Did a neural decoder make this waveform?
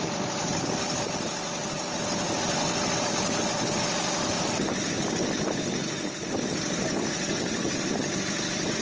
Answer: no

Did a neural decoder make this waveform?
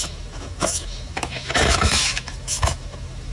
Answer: yes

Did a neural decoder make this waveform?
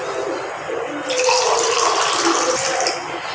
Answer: no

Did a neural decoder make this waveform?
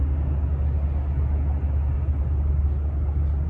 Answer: no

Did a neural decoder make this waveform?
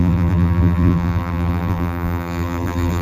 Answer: yes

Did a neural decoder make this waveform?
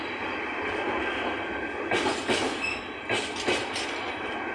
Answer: no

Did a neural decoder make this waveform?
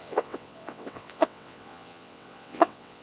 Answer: yes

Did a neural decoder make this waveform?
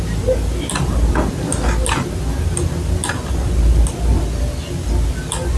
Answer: no